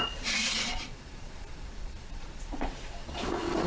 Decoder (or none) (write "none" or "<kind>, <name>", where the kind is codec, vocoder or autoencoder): vocoder, Vocos